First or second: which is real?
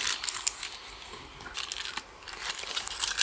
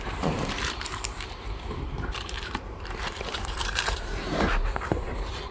first